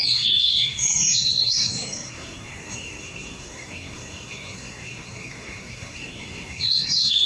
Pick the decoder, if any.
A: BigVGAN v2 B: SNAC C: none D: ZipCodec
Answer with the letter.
B